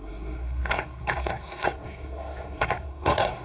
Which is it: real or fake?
fake